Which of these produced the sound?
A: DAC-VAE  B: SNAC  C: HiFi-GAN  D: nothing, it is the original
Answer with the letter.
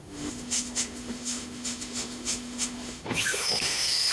A